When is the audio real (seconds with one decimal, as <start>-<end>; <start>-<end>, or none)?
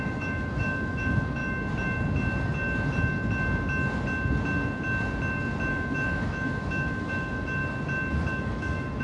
1.4-5.7; 7.6-8.3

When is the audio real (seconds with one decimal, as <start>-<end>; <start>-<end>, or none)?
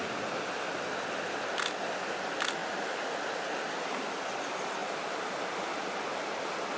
0.0-6.8